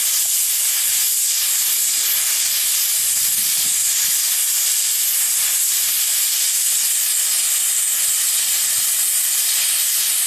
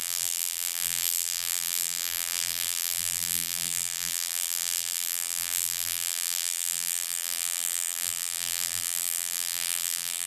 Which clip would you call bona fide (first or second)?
first